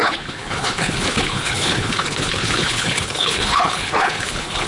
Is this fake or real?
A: fake